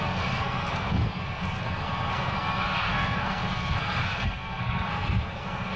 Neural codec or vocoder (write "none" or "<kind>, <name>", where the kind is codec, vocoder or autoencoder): codec, SNAC